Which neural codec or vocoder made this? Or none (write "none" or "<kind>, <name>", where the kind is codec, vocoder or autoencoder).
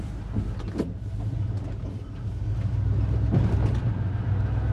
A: none